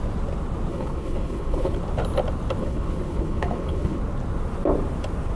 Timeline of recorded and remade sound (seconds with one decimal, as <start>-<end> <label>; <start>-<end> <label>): 0.0-0.7 recorded; 0.7-1.8 remade; 1.8-2.6 recorded; 2.6-4.0 remade; 4.0-5.4 recorded

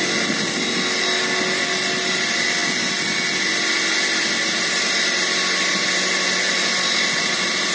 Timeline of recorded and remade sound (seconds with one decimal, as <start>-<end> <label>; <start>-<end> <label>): 0.0-7.7 recorded

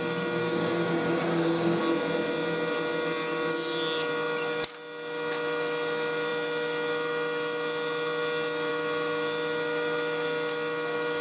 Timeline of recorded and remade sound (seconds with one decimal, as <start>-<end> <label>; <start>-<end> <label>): 0.0-0.4 recorded; 0.4-1.8 remade; 1.8-11.2 recorded

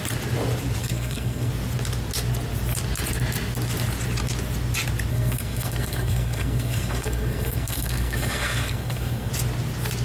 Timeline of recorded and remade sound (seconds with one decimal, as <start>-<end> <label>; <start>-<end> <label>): 0.0-0.8 recorded; 0.8-1.5 remade; 1.5-5.1 recorded; 5.1-9.3 remade; 9.3-10.0 recorded

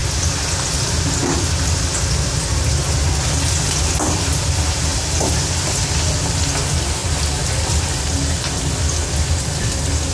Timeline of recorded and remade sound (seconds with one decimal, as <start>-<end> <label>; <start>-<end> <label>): 0.0-10.1 recorded

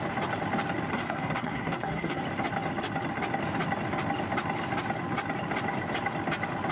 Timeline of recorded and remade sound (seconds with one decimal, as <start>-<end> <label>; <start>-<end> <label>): 0.0-0.9 recorded; 0.9-2.2 remade; 2.2-6.7 recorded